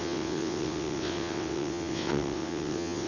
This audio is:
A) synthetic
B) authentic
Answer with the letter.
A